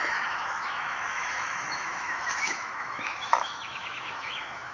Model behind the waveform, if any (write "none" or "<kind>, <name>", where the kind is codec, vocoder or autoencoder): autoencoder, DAC-VAE